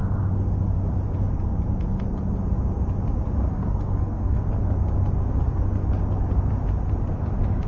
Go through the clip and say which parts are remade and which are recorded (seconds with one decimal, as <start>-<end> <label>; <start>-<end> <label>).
0.0-3.5 recorded; 3.5-4.4 remade; 4.4-7.7 recorded